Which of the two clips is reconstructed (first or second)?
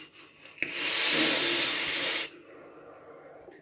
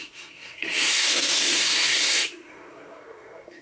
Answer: second